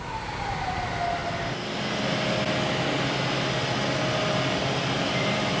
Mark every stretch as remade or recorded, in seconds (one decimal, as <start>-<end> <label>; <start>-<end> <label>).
0.0-5.6 recorded